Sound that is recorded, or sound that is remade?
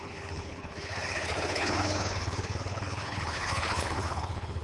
remade